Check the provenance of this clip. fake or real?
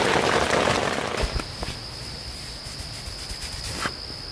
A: real